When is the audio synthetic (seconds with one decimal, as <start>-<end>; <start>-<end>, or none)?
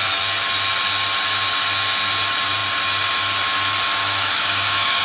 4.0-5.0